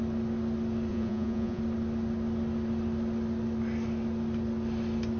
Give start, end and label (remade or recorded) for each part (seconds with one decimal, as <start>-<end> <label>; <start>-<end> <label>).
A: 0.0-0.9 recorded; 0.9-1.6 remade; 1.6-5.2 recorded